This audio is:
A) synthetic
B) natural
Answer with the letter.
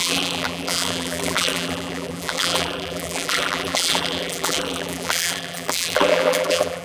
A